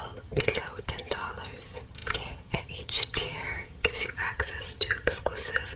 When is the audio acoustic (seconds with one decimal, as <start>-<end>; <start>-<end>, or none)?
none